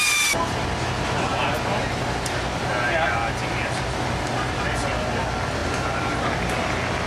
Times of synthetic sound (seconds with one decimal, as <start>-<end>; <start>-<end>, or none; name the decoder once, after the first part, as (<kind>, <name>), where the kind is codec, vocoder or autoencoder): 3.6-4.2 (vocoder, BigVGAN v2)